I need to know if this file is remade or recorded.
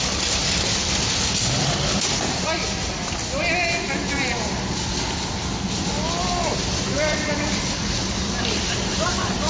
recorded